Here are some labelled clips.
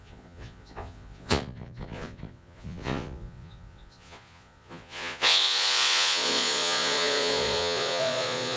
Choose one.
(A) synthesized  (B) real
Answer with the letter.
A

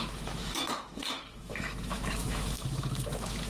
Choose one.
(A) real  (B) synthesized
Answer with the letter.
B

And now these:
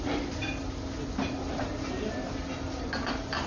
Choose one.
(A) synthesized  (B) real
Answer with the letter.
B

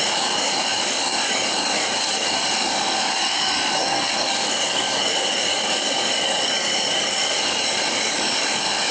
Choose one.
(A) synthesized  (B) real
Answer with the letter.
A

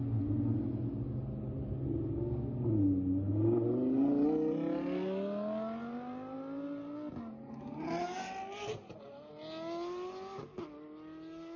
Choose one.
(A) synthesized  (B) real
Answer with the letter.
B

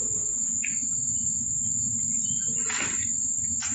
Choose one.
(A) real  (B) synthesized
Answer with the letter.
A